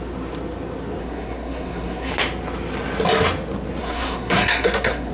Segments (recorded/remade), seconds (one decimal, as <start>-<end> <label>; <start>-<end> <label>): 0.0-1.0 recorded; 1.0-2.1 remade; 2.1-3.8 recorded; 3.8-5.1 remade